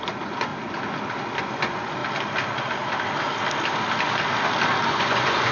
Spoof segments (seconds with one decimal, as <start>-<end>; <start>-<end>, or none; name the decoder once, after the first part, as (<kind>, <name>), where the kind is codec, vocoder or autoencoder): 0.0-0.5 (vocoder, Vocos); 1.4-2.0; 4.9-5.5